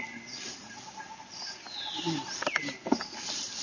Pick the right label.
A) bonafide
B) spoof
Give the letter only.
A